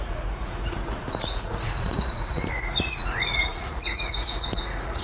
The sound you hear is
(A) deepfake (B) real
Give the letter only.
A